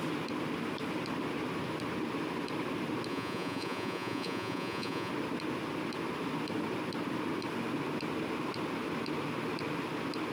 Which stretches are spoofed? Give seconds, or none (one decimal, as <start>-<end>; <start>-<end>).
3.1-5.1